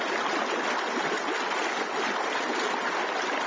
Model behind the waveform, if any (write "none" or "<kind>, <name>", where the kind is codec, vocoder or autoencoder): vocoder, BigVGAN v2